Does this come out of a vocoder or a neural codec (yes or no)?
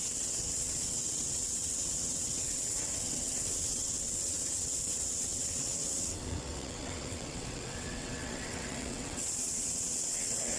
yes